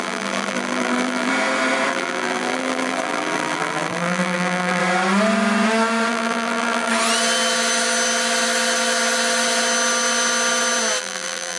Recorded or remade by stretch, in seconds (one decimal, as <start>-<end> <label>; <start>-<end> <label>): 0.0-1.3 remade; 1.3-1.9 recorded; 1.9-4.8 remade; 4.8-6.1 recorded; 6.1-6.9 remade; 6.9-11.0 recorded; 11.0-11.6 remade